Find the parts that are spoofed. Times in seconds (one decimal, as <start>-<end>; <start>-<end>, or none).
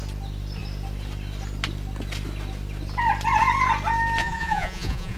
4.2-5.2